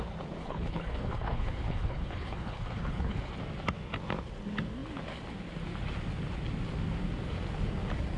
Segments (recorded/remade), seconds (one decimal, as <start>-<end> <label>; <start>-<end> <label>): 0.0-0.4 recorded; 0.4-3.3 remade; 3.3-8.2 recorded